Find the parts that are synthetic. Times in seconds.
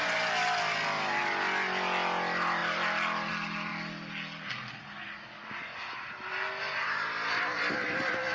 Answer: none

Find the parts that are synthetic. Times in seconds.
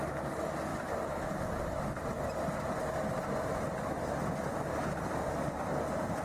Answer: 0.7-1.8 (vocoder, BigVGAN v2); 3.8-4.8